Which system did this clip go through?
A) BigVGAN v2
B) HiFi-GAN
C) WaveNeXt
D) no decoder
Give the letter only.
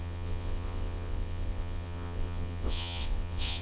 C